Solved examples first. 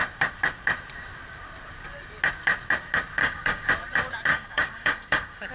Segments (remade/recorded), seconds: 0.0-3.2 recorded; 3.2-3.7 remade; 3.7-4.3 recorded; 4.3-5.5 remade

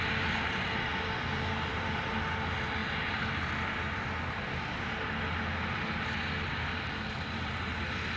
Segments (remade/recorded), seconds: 0.0-0.9 remade; 0.9-1.5 recorded; 1.5-2.8 remade; 2.8-6.5 recorded; 6.5-8.2 remade

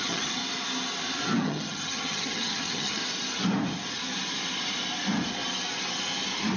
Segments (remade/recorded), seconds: 0.0-0.4 remade; 0.4-1.4 recorded; 1.4-3.0 remade; 3.0-6.6 recorded

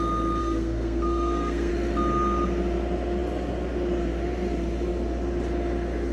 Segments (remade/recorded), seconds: 0.0-0.4 recorded; 0.4-1.7 remade; 1.7-6.1 recorded

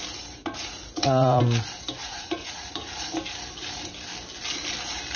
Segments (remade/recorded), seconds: 0.0-0.4 recorded; 0.4-1.4 remade; 1.4-2.0 recorded; 2.0-3.1 remade; 3.1-5.2 recorded

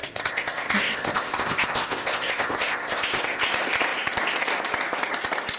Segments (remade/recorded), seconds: 0.0-3.4 remade; 3.4-5.6 recorded

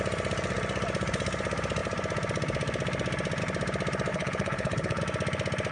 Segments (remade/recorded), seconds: 0.0-4.1 recorded; 4.1-5.0 remade; 5.0-5.7 recorded